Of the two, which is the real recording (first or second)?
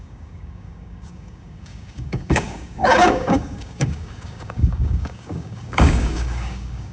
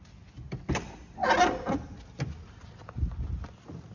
second